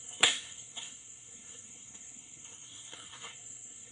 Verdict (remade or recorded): remade